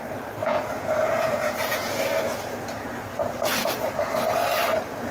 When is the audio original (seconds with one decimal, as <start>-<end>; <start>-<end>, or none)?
0.0-0.4; 2.0-5.1